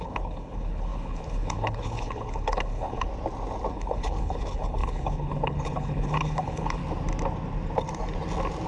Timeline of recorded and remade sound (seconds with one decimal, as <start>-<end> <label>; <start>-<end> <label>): 0.0-3.1 remade; 3.1-3.7 recorded; 3.7-6.8 remade; 6.8-8.7 recorded